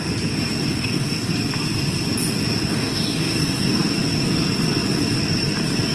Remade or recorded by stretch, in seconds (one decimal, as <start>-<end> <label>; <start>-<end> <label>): 0.0-0.7 recorded; 0.7-1.3 remade; 1.3-2.7 recorded; 2.7-3.8 remade; 3.8-5.9 recorded